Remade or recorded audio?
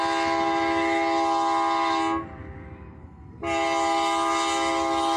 recorded